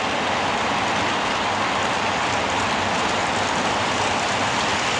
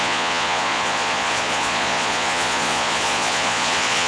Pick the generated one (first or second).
second